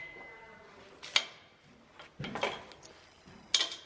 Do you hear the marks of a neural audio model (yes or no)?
no